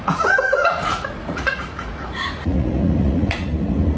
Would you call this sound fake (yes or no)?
yes